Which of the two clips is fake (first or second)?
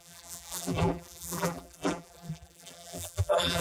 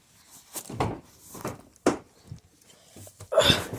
first